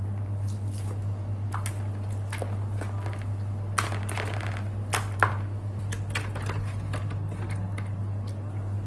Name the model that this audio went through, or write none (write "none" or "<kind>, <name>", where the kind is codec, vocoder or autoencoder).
none